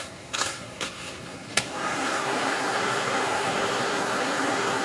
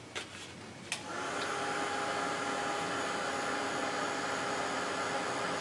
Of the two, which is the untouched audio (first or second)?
second